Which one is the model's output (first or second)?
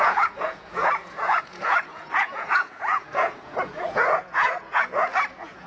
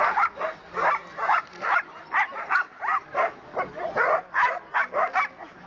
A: first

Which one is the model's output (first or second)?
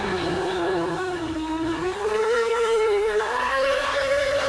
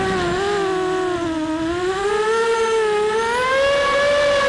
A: first